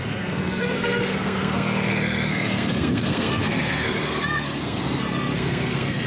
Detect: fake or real fake